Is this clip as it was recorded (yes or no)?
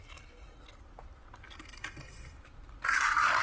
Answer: yes